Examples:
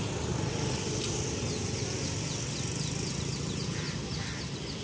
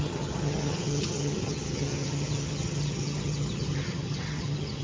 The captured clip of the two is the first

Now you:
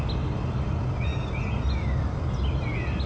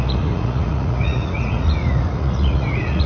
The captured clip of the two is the first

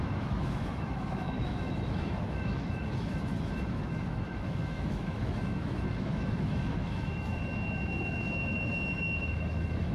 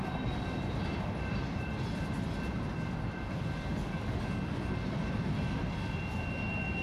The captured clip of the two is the second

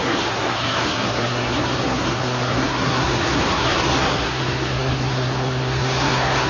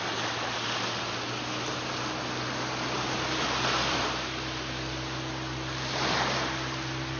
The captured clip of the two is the second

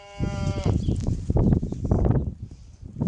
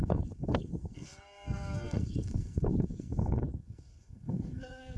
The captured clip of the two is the first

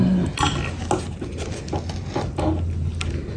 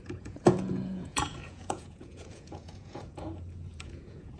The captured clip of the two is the first